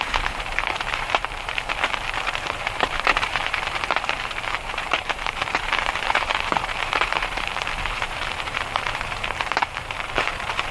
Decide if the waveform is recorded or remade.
remade